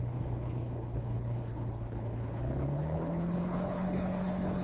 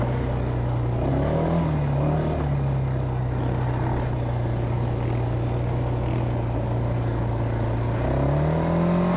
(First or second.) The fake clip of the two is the first